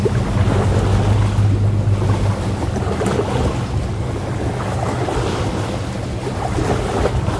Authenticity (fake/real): real